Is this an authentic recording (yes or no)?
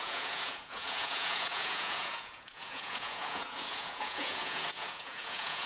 no